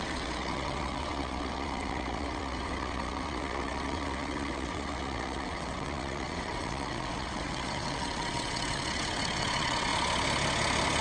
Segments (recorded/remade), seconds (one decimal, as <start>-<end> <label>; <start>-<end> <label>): 0.0-9.9 remade; 9.9-11.0 recorded